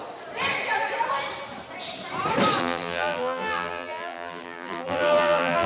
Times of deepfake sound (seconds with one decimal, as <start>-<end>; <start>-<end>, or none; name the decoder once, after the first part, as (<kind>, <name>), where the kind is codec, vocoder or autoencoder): 2.6-5.7 (vocoder, BigVGAN v2)